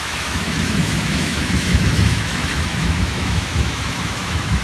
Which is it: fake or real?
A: fake